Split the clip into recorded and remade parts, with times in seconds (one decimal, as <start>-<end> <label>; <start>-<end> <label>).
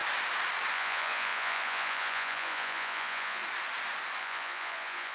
0.0-0.7 recorded; 0.7-3.4 remade; 3.4-4.2 recorded; 4.2-5.1 remade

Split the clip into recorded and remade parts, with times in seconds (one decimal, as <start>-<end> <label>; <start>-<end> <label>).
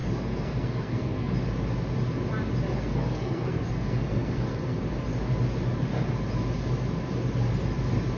0.0-1.3 remade; 1.3-2.7 recorded; 2.7-4.8 remade; 4.8-8.2 recorded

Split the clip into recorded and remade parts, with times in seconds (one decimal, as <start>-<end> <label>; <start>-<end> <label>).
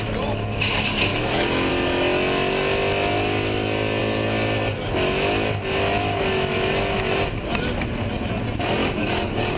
0.0-1.1 recorded; 1.1-1.7 remade; 1.7-8.8 recorded; 8.8-9.6 remade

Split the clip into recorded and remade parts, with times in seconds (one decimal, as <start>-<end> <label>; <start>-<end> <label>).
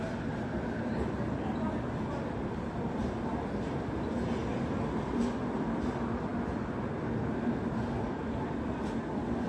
0.0-3.0 remade; 3.0-5.6 recorded; 5.6-6.3 remade; 6.3-7.8 recorded; 7.8-9.5 remade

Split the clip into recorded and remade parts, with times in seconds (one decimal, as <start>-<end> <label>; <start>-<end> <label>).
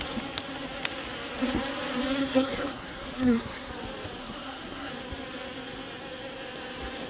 0.0-2.2 recorded; 2.2-3.7 remade; 3.7-4.2 recorded; 4.2-4.9 remade; 4.9-7.1 recorded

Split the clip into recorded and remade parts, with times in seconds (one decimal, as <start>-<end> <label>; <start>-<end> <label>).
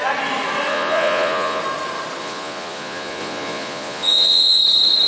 0.0-0.7 recorded; 0.7-1.6 remade; 1.6-2.2 recorded; 2.2-4.6 remade; 4.6-5.1 recorded